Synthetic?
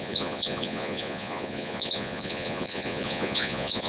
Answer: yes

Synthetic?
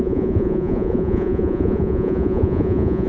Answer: yes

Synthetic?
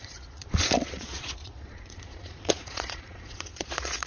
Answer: yes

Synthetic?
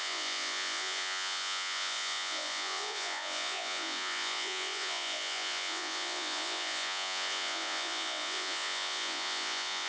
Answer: yes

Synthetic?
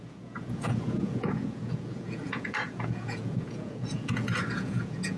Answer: yes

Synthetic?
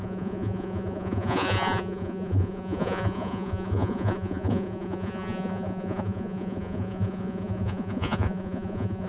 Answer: yes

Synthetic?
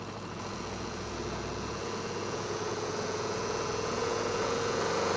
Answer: yes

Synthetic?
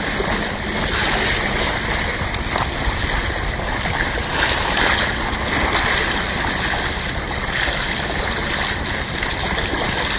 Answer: no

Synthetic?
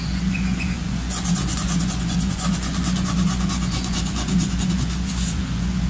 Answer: yes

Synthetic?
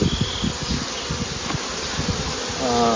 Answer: no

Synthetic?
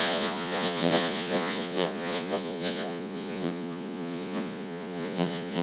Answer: yes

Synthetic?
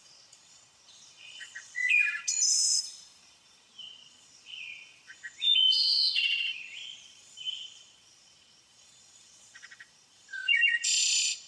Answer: yes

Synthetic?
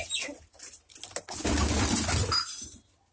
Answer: no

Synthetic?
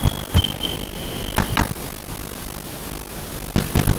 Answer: no